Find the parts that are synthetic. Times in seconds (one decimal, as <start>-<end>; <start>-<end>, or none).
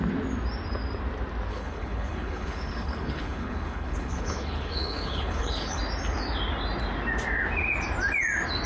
1.5-5.8